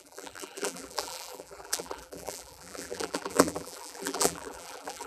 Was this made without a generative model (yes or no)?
no